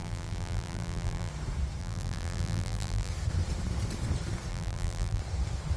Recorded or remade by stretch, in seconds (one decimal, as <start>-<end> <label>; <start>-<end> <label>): 0.0-1.3 remade; 1.3-1.8 recorded; 1.8-3.1 remade; 3.1-4.5 recorded; 4.5-5.2 remade; 5.2-5.8 recorded